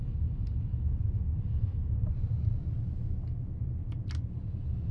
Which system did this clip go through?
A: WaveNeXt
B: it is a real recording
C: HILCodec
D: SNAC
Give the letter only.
B